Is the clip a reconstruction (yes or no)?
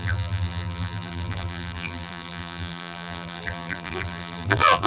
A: yes